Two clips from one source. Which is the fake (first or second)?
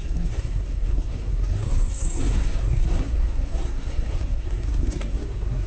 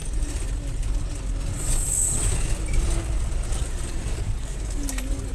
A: first